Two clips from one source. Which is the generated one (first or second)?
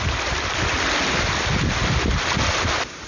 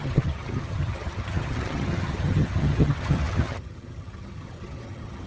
second